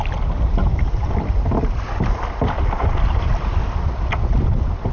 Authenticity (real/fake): real